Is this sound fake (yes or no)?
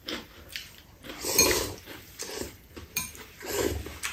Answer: yes